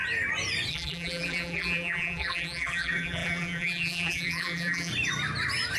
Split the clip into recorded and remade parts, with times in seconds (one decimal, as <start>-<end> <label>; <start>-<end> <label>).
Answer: 0.0-0.7 recorded; 0.7-4.9 remade; 4.9-5.8 recorded